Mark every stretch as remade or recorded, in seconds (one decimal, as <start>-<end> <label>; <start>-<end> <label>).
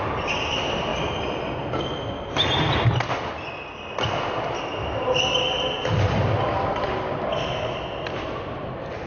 0.0-9.1 recorded